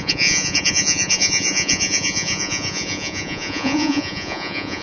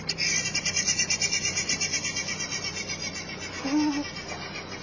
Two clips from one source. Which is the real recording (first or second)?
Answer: second